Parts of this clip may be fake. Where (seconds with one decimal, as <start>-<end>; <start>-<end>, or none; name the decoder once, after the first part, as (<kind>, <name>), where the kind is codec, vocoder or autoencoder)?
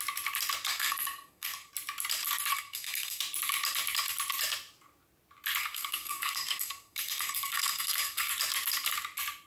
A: 0.7-1.7 (codec, SNAC); 2.5-3.2; 5.6-8.3